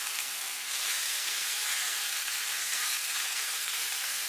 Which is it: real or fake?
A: fake